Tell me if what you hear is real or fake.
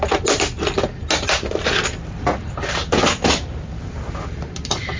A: real